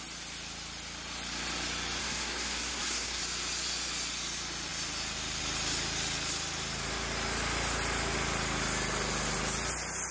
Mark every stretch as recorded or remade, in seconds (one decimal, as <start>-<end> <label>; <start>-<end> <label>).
0.0-2.0 recorded; 2.0-3.2 remade; 3.2-10.1 recorded